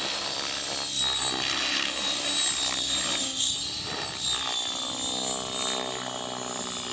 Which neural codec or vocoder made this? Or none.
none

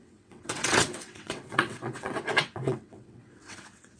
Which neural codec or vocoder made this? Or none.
vocoder, WaveNeXt